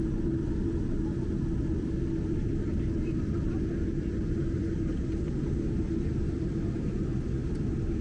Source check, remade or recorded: recorded